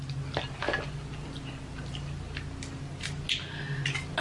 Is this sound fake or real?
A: real